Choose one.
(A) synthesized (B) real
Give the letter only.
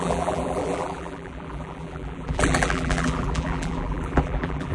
A